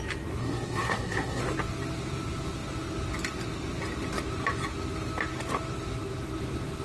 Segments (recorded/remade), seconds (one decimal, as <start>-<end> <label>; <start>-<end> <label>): 0.0-0.4 recorded; 0.4-1.4 remade; 1.4-6.8 recorded